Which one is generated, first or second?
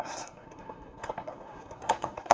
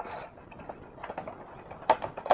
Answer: first